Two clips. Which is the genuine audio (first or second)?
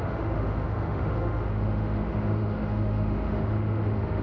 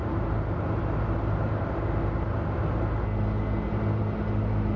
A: second